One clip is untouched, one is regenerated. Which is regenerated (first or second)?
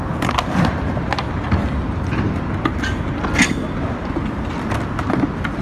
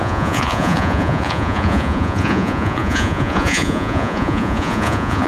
second